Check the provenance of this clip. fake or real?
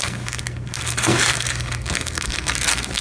fake